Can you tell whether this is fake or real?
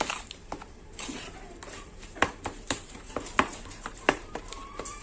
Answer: fake